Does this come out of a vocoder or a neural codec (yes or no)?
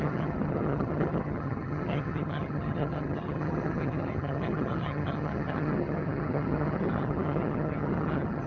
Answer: yes